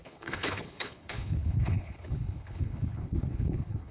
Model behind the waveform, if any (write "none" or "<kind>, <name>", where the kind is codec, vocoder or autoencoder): codec, HILCodec